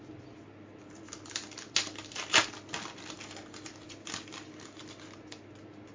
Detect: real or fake real